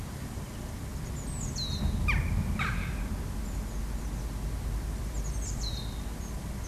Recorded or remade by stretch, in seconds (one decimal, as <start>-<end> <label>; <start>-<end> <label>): 0.0-0.9 remade; 0.9-4.9 recorded; 4.9-6.7 remade